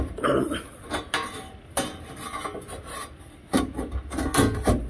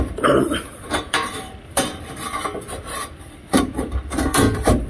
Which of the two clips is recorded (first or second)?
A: first